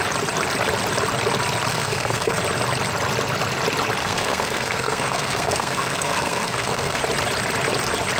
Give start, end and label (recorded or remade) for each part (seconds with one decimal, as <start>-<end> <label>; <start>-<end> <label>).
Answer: 0.0-1.7 recorded; 1.7-2.4 remade; 2.4-4.0 recorded; 4.0-7.0 remade; 7.0-8.2 recorded